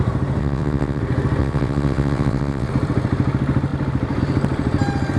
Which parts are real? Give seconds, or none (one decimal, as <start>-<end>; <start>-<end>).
0.0-0.4; 1.0-1.4; 2.7-5.2